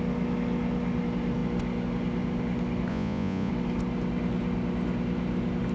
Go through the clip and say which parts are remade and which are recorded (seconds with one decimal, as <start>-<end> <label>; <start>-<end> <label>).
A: 0.0-2.9 recorded; 2.9-3.5 remade; 3.5-5.7 recorded